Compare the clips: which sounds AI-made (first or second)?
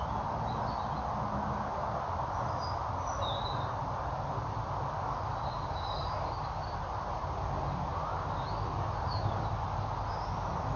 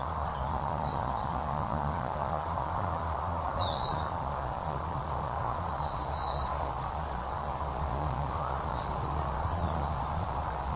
second